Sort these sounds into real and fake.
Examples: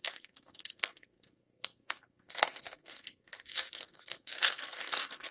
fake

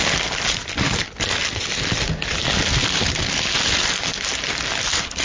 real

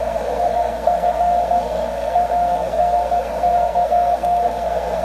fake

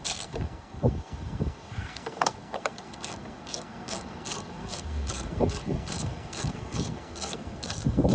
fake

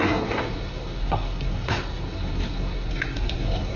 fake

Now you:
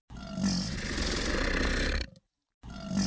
real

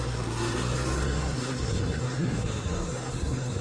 fake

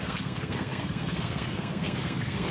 fake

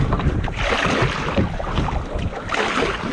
real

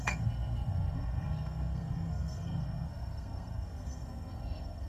fake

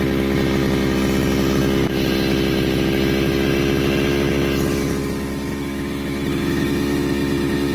real